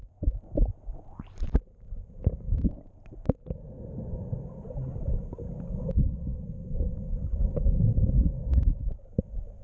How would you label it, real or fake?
real